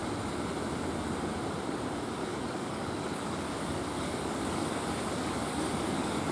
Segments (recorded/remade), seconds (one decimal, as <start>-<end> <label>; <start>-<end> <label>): 0.0-2.2 recorded; 2.2-6.3 remade